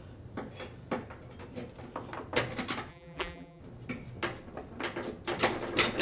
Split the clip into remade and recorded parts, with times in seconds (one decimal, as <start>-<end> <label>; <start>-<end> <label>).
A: 0.0-2.9 recorded; 2.9-3.6 remade; 3.6-6.0 recorded